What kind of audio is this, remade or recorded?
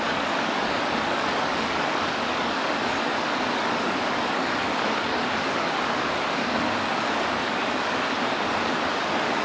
remade